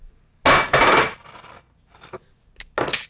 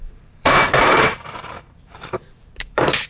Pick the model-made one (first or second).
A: second